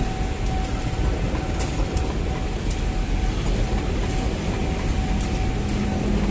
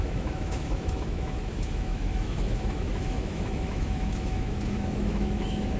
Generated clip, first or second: second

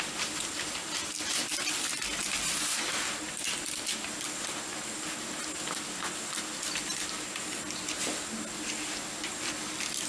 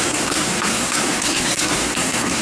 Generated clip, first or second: second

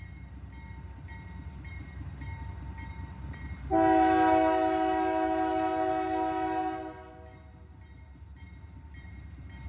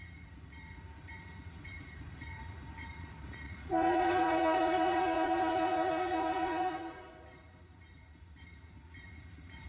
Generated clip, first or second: second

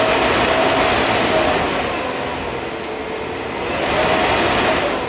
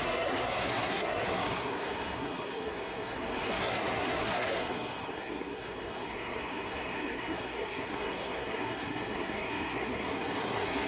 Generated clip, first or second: second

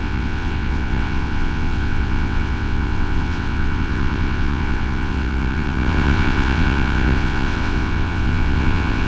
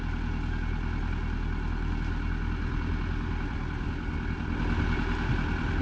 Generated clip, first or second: first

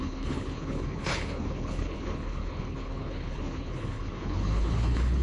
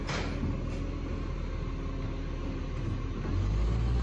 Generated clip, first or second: first